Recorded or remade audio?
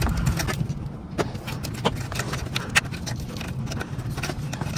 recorded